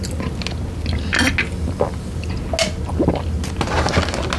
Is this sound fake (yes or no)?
no